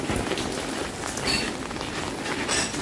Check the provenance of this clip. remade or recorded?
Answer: recorded